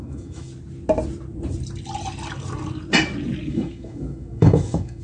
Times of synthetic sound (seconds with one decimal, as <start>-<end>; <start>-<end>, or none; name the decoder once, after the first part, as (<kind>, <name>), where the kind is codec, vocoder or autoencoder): 0.0-0.5 (autoencoder, DAC-VAE); 3.5-5.0